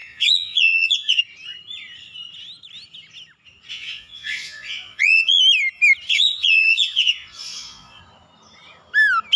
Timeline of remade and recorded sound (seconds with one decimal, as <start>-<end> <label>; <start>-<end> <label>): 0.0-1.2 remade; 1.2-3.7 recorded; 3.7-5.4 remade; 5.4-6.1 recorded; 6.1-8.0 remade; 8.0-9.4 recorded